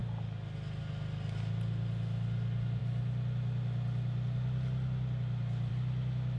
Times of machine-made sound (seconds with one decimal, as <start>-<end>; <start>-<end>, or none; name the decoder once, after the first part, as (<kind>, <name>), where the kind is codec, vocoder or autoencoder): none